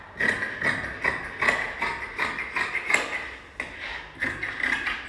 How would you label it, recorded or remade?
recorded